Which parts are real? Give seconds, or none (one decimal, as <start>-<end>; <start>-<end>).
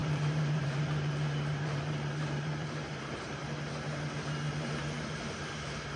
3.4-4.5